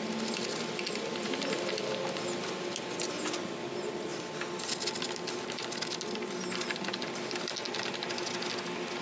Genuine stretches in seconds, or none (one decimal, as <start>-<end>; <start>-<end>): 0.0-9.0